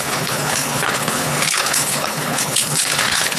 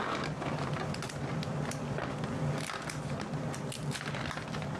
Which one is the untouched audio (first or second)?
second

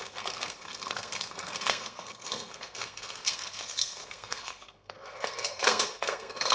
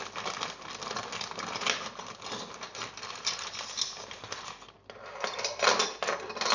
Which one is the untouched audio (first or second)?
second